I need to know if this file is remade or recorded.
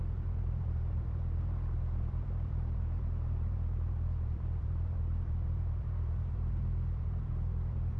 remade